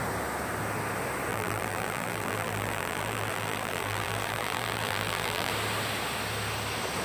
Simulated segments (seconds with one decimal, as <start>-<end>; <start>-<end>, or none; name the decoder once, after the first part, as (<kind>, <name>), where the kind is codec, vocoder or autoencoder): 1.3-5.5 (vocoder, BigVGAN v2)